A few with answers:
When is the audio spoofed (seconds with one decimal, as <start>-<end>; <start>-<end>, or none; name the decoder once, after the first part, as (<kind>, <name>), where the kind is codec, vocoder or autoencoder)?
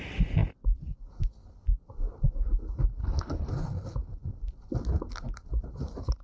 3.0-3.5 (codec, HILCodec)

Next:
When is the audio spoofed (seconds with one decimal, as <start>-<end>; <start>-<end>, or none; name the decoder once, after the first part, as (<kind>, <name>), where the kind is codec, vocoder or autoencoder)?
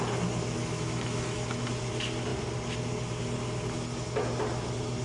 0.6-1.7 (autoencoder, DAC-VAE)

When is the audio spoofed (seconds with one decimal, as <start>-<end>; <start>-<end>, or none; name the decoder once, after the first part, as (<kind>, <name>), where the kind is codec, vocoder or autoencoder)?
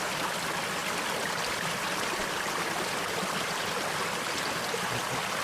0.8-4.0 (vocoder, BigVGAN v2)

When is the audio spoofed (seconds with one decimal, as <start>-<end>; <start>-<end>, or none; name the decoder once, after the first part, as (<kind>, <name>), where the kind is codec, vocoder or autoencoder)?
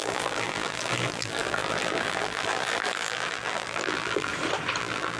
0.0-4.3 (vocoder, BigVGAN v2); 4.8-5.2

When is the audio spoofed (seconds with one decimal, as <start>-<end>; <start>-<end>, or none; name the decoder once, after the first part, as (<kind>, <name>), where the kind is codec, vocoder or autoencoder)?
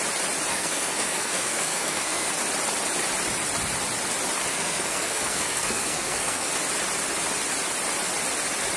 0.5-2.3 (codec, SNAC); 4.5-6.5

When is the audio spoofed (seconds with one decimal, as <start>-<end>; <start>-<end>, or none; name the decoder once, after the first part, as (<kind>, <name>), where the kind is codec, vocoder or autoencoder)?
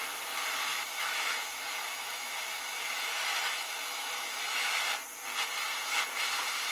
0.7-4.7 (autoencoder, DAC-VAE)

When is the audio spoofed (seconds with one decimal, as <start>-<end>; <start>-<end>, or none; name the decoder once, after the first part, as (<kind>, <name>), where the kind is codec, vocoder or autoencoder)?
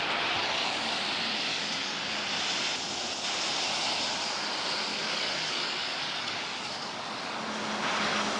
0.4-1.0 (codec, DAC); 1.5-2.2; 4.9-7.4